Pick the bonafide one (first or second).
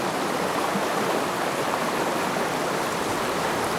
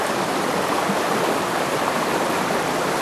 first